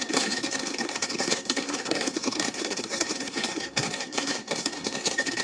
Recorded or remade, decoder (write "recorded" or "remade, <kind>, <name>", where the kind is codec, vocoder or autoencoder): remade, codec, SNAC